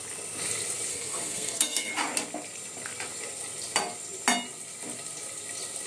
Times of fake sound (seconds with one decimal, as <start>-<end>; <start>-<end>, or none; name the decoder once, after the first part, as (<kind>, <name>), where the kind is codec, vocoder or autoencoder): 0.9-1.9 (codec, SNAC)

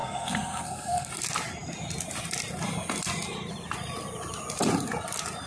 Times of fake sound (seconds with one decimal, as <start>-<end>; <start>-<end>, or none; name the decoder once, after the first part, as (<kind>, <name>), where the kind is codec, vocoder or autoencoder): 0.0-1.1 (codec, SNAC)

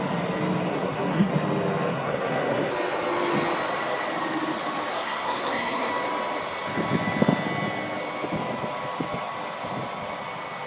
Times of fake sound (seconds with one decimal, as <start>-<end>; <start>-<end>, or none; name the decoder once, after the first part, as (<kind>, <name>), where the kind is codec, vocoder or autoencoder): 0.7-1.3 (codec, SNAC); 1.9-2.7; 4.9-5.9

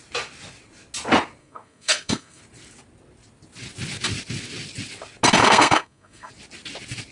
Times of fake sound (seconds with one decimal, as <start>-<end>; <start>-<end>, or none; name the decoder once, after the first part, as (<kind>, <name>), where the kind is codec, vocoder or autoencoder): 1.4-2.4 (codec, SNAC); 5.4-6.3

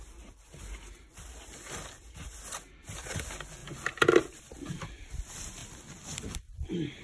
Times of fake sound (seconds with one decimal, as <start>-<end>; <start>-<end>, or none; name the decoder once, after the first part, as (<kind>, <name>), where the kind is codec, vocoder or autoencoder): none